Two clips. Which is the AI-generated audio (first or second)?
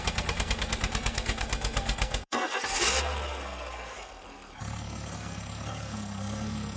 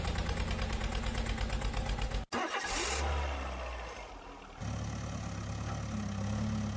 first